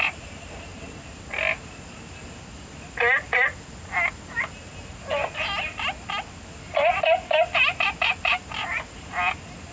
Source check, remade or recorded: recorded